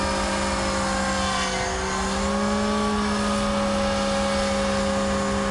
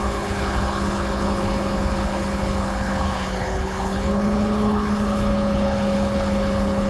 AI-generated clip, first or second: second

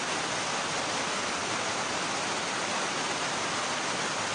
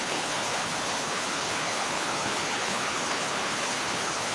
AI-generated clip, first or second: second